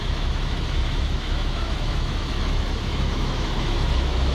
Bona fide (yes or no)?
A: no